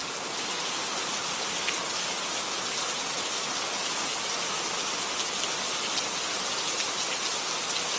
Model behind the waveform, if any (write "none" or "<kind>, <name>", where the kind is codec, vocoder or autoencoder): none